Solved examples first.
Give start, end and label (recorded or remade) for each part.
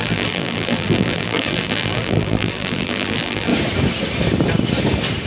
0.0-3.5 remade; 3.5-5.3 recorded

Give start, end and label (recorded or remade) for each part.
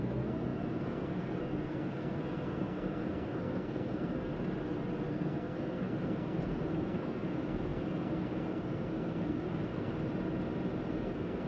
0.0-4.3 remade; 4.3-5.1 recorded; 5.1-9.9 remade; 9.9-10.9 recorded; 10.9-11.5 remade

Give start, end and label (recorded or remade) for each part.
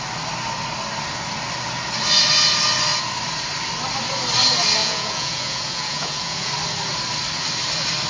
0.0-4.8 recorded; 4.8-6.5 remade; 6.5-8.1 recorded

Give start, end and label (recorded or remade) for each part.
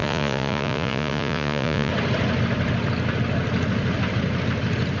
0.0-1.9 remade; 1.9-5.0 recorded